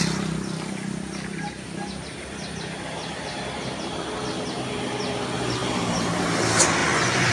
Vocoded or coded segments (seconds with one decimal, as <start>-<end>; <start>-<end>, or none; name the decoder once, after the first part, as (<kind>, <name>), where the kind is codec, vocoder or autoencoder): 6.8-7.3 (vocoder, Vocos)